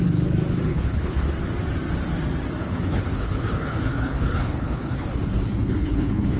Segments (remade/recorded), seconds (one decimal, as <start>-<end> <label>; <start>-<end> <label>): 0.0-0.7 recorded; 0.7-1.3 remade; 1.3-2.6 recorded; 2.6-6.4 remade